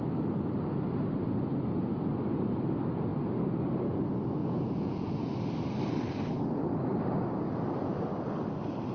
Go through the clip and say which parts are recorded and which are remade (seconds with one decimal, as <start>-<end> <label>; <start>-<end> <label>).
0.0-4.4 recorded; 4.4-5.3 remade; 5.3-8.9 recorded